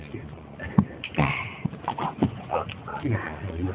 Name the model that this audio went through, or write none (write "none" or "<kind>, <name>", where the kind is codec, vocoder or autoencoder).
vocoder, Vocos